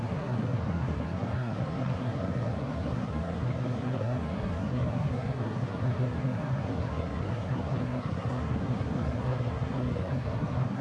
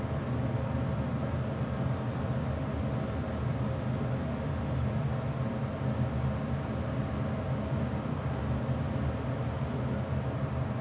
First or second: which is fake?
first